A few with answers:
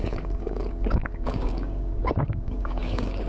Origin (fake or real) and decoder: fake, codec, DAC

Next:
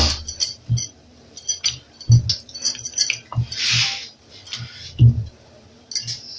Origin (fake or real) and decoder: real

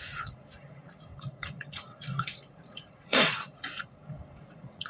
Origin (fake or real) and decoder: fake, vocoder, Vocos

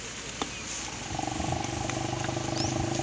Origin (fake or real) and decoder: real